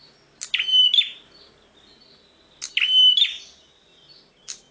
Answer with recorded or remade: recorded